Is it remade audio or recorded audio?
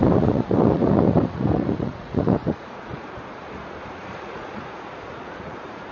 remade